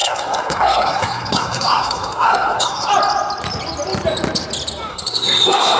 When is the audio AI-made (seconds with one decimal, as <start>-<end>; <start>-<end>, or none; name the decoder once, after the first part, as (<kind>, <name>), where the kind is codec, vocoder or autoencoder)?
0.0-2.9 (codec, SNAC); 4.9-5.8